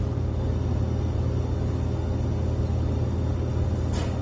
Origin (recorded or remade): recorded